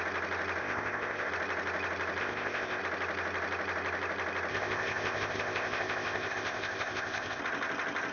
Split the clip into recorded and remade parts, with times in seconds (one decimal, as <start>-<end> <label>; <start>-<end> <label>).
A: 0.0-0.6 recorded; 0.6-1.3 remade; 1.3-2.2 recorded; 2.2-2.8 remade; 2.8-4.5 recorded; 4.5-7.4 remade; 7.4-8.1 recorded

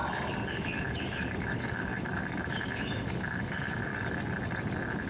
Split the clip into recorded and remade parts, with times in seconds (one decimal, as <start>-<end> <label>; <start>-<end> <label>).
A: 0.0-0.5 recorded; 0.5-3.9 remade; 3.9-5.1 recorded

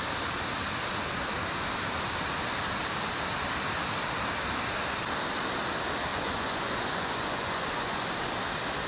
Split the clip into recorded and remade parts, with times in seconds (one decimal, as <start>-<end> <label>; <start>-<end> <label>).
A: 0.0-6.1 recorded; 6.1-8.1 remade; 8.1-8.9 recorded

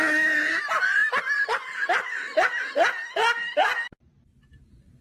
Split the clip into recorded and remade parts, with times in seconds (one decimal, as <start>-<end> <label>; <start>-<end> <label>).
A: 0.0-5.0 recorded

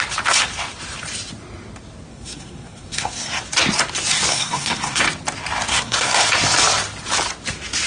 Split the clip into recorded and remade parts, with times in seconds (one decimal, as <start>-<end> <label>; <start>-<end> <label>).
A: 0.0-2.1 recorded; 2.1-3.4 remade; 3.4-4.3 recorded; 4.3-5.0 remade; 5.0-5.7 recorded; 5.7-6.2 remade; 6.2-7.9 recorded

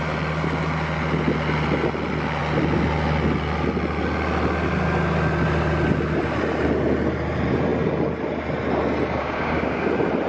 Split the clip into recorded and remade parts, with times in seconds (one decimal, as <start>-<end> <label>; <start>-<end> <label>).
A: 0.0-9.2 recorded; 9.2-9.9 remade; 9.9-10.3 recorded

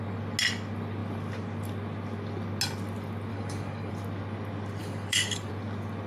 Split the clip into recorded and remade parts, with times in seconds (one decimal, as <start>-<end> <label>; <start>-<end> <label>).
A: 0.0-3.3 recorded; 3.3-3.9 remade; 3.9-4.8 recorded; 4.8-5.5 remade; 5.5-6.1 recorded